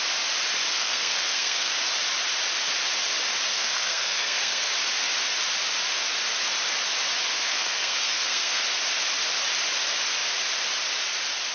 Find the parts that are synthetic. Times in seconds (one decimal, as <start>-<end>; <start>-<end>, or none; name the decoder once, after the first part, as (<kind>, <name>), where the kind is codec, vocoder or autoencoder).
0.7-1.7 (codec, SNAC); 3.5-4.7; 7.3-8.6